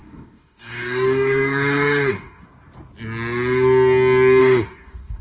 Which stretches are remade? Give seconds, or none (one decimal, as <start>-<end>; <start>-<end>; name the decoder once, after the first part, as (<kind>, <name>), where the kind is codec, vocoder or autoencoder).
0.0-2.4 (codec, DAC); 4.4-5.2